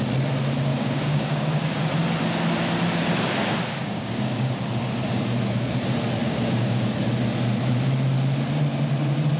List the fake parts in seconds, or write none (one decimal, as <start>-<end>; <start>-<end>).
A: 0.7-1.7; 3.8-4.5; 6.2-6.9